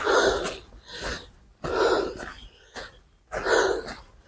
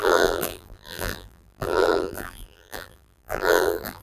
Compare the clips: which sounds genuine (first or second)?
first